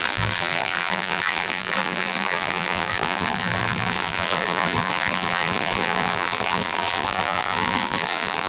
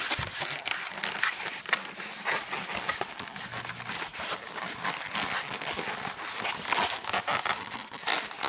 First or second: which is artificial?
first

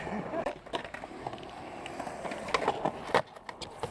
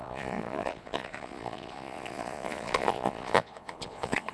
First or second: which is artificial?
second